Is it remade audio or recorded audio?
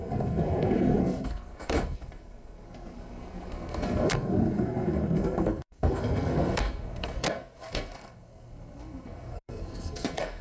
remade